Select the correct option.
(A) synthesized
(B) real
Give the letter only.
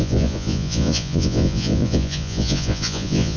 A